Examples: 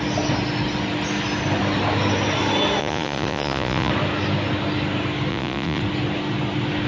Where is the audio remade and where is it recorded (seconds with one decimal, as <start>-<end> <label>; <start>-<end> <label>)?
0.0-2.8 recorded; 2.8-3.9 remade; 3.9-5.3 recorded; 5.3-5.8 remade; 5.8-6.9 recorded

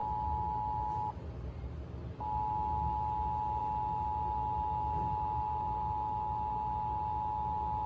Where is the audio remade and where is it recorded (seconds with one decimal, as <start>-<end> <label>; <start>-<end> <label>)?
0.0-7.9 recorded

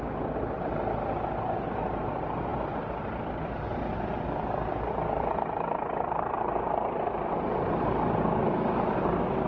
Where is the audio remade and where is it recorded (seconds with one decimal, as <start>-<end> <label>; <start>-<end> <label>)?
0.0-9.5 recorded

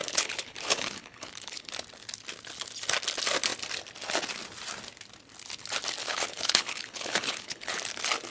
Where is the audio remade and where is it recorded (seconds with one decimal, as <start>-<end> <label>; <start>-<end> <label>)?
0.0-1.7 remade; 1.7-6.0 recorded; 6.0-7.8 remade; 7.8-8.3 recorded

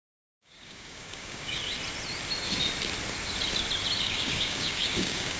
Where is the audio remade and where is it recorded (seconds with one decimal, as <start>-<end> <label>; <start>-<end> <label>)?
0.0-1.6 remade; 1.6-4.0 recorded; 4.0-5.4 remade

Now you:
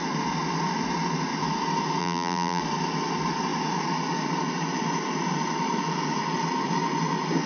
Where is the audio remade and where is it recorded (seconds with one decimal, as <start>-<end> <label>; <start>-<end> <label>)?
0.0-2.0 recorded; 2.0-2.6 remade; 2.6-7.5 recorded